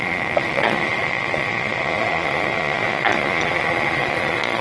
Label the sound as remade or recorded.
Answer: remade